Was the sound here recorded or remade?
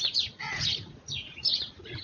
remade